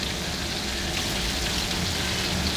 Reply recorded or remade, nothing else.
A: recorded